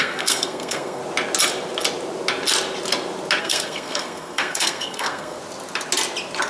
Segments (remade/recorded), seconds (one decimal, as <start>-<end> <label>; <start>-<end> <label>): 0.0-1.0 remade; 1.0-3.4 recorded; 3.4-5.4 remade; 5.4-6.5 recorded